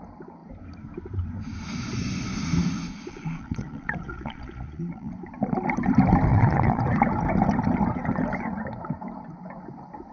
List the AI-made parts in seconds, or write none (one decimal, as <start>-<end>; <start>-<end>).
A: 3.1-5.1; 6.3-6.8